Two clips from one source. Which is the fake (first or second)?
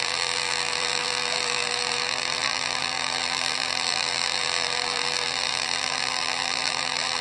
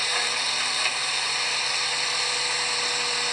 first